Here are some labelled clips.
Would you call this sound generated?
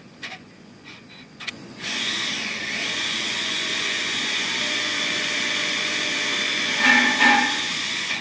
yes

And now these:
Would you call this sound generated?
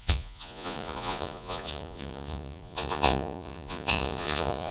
yes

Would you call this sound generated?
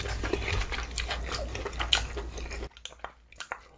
no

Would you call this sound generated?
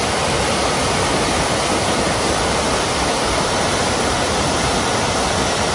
no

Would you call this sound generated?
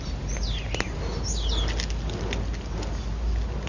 no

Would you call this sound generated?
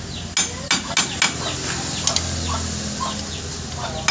no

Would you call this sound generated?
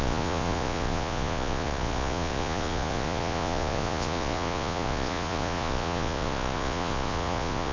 yes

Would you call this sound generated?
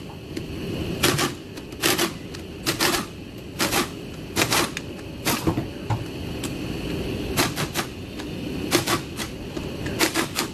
no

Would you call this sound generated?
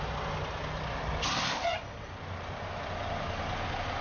no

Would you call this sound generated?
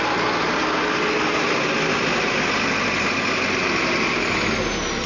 no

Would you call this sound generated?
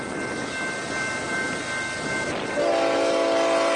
no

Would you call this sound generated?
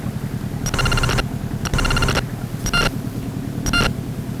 no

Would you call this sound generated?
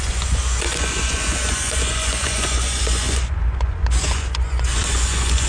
yes